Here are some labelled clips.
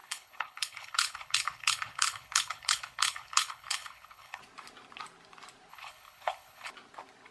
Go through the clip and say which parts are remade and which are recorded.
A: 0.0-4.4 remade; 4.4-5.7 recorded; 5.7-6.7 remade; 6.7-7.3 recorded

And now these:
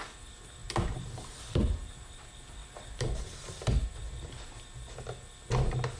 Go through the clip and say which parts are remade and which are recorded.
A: 0.0-6.0 recorded

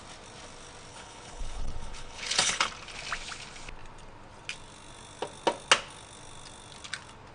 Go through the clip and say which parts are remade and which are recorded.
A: 0.0-0.9 recorded; 0.9-2.7 remade; 2.7-7.3 recorded

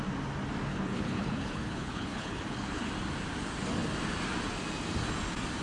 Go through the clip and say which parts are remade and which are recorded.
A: 0.0-0.7 recorded; 0.7-2.9 remade; 2.9-5.6 recorded

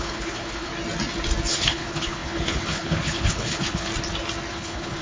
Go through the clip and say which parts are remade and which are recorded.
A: 0.0-0.7 remade; 0.7-1.5 recorded; 1.5-3.9 remade; 3.9-4.5 recorded; 4.5-5.0 remade